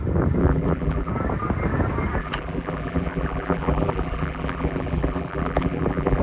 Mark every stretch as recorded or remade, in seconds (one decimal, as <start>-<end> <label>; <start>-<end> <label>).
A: 0.0-0.4 recorded; 0.4-1.1 remade; 1.1-2.2 recorded; 2.2-6.2 remade